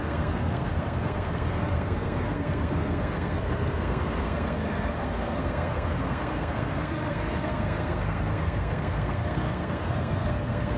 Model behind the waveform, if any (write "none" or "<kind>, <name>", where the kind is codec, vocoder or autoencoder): codec, SNAC